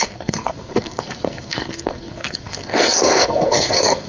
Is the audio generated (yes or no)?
yes